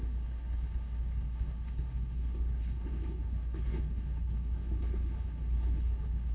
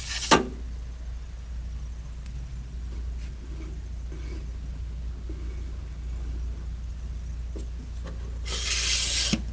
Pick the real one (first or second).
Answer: second